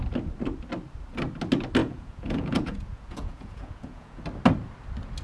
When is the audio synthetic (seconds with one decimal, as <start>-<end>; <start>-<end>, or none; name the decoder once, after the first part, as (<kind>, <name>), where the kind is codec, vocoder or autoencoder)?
1.8-4.2 (vocoder, Vocos)